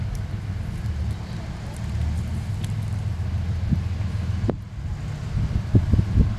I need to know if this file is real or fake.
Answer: real